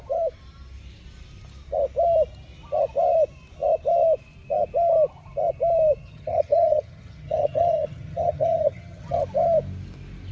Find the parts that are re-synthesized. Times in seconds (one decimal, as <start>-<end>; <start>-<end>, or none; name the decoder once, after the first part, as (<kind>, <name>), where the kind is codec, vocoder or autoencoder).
6.0-9.2 (vocoder, HiFi-GAN)